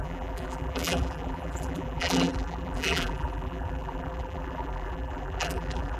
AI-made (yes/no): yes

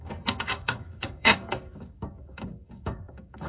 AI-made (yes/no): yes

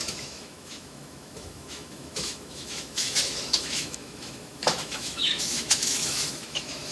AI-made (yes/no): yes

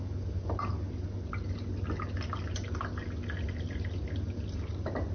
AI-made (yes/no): no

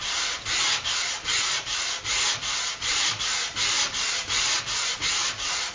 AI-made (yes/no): no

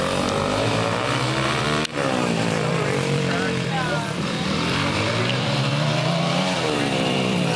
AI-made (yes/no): yes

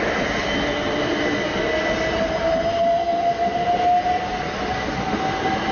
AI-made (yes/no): no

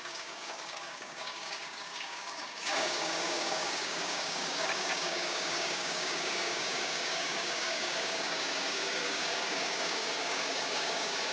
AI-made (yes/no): yes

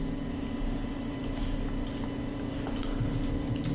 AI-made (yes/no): no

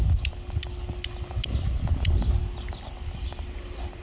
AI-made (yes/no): no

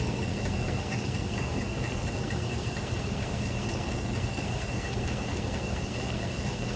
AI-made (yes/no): yes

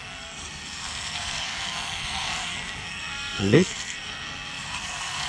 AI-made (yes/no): yes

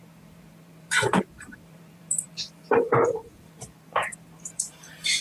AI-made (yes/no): yes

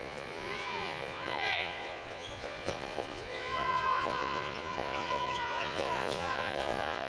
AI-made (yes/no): yes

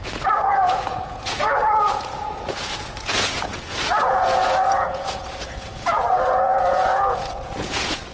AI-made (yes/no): yes